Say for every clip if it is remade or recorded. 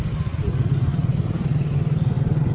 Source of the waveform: remade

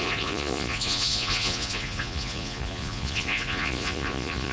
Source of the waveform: remade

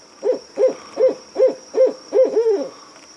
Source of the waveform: recorded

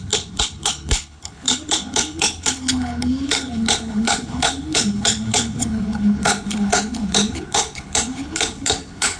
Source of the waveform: remade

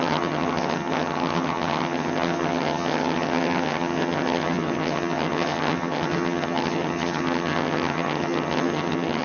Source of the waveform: remade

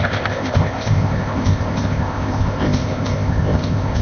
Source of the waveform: remade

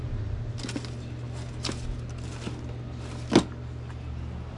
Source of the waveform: recorded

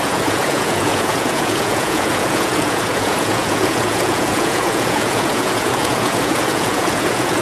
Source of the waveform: remade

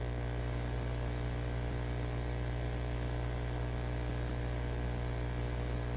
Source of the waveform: recorded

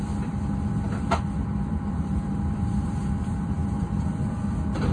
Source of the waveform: remade